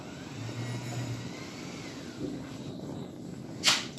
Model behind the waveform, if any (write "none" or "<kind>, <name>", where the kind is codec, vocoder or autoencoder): none